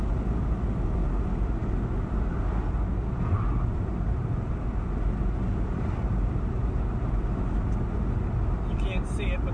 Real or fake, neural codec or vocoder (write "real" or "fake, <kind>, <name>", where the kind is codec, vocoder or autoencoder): real